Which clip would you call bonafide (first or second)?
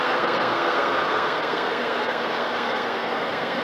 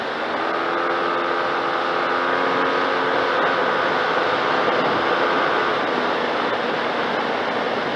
second